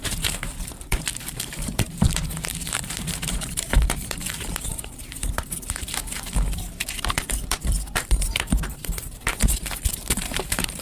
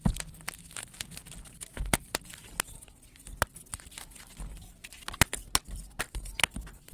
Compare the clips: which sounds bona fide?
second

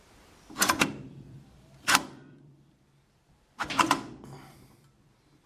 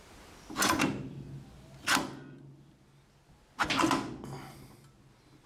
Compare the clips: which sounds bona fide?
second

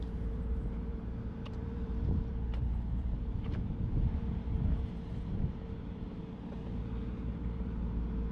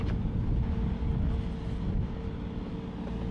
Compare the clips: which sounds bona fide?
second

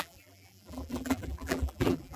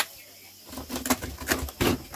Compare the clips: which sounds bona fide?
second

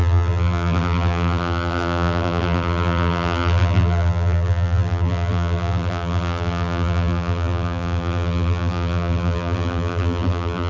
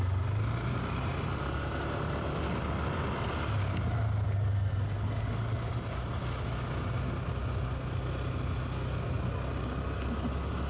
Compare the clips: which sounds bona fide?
second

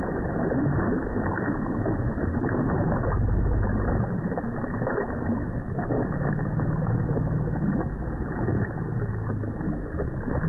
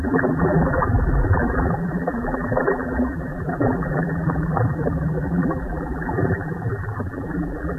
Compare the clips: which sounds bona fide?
first